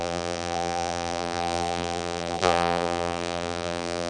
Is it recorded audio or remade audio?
remade